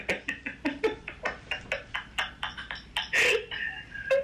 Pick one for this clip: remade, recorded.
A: recorded